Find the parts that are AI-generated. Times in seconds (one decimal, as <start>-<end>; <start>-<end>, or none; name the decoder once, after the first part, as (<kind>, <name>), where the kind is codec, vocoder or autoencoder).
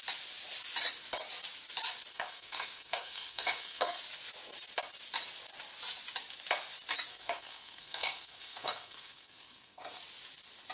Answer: 2.1-4.0 (codec, SNAC); 7.1-10.0